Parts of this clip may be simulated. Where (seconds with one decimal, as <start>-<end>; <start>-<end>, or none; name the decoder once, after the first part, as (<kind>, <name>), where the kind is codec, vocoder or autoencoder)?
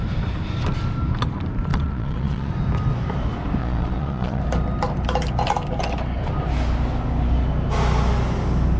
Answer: 1.7-2.5 (vocoder, Vocos); 3.6-4.4